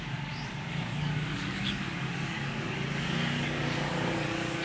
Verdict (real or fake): fake